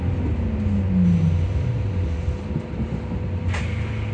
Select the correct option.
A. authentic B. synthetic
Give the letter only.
A